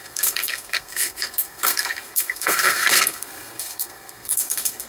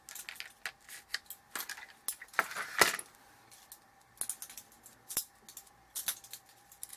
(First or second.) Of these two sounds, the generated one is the first